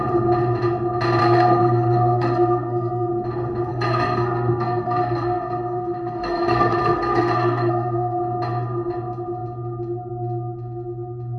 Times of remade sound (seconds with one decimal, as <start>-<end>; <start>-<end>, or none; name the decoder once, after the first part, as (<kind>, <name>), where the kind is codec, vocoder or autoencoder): 1.2-3.1 (codec, SNAC); 3.7-8.2